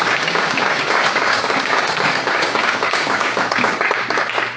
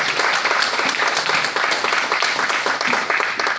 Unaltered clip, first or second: second